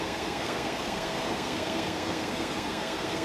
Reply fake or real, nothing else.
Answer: fake